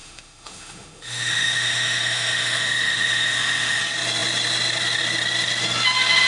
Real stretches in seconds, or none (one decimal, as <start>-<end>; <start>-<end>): 3.8-6.3